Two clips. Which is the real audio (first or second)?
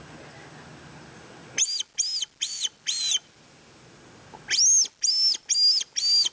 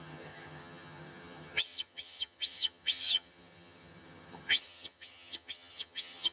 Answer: first